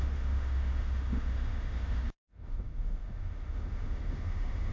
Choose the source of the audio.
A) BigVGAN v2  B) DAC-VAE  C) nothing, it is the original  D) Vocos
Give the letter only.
B